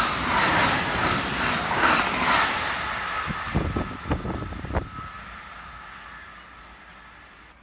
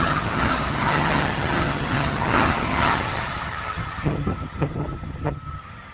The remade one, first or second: second